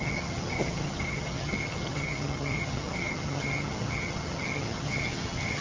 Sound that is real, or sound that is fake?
fake